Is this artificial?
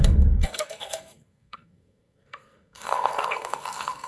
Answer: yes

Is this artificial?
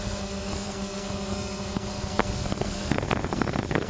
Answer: yes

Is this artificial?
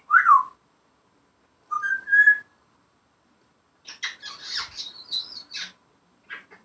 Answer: no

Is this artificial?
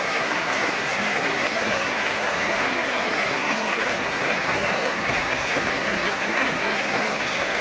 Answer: yes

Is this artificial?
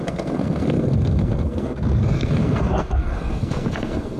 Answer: yes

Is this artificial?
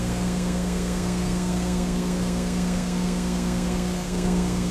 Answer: yes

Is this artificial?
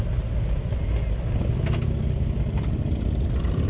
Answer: no